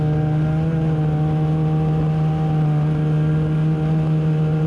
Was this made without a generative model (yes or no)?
yes